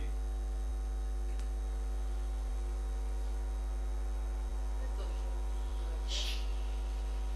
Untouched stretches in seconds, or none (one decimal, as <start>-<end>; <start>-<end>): 0.0-7.4